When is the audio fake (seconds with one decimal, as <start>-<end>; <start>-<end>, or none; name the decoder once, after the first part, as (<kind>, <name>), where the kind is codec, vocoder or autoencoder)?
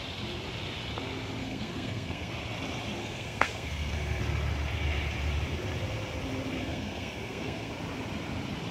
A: 1.4-2.3 (codec, SNAC); 3.0-4.2; 6.6-7.7